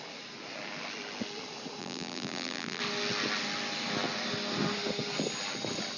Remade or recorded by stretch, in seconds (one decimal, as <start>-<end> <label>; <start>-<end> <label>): 0.0-1.8 recorded; 1.8-2.8 remade; 2.8-6.0 recorded